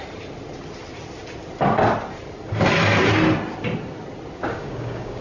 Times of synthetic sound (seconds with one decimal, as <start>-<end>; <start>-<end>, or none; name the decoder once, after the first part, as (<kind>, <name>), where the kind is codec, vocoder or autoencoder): 4.5-5.2 (codec, DAC)